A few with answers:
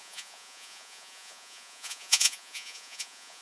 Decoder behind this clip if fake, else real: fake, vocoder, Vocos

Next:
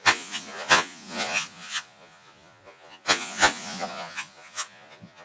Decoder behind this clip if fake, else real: fake, vocoder, Vocos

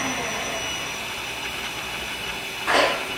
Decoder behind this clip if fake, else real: real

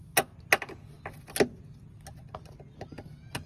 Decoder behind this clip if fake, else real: real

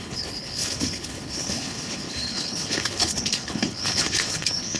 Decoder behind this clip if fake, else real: fake, codec, HILCodec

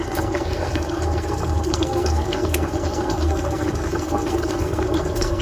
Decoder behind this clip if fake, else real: fake, codec, SNAC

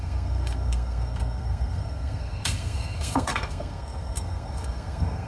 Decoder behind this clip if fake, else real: fake, codec, SNAC